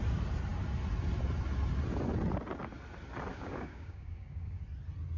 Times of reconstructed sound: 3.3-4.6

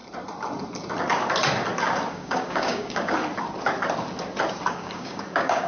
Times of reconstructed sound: 2.1-3.2; 4.7-5.7